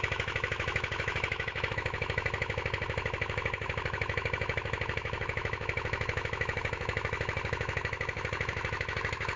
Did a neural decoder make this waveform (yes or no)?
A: yes